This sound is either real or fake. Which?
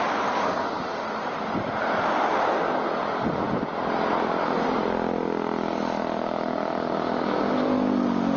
real